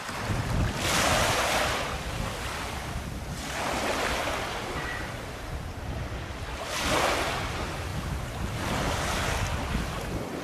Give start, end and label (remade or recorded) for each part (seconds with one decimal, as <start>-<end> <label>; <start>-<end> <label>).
0.0-10.4 recorded